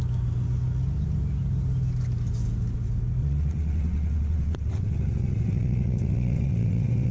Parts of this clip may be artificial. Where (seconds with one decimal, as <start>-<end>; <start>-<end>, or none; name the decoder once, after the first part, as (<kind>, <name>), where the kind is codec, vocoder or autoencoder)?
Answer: 3.2-7.1 (vocoder, WaveNeXt)